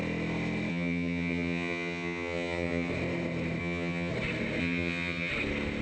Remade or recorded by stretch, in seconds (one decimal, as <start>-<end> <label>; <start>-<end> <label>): 0.0-0.7 recorded; 0.7-2.9 remade; 2.9-3.6 recorded; 3.6-4.1 remade; 4.1-4.6 recorded; 4.6-5.3 remade; 5.3-5.8 recorded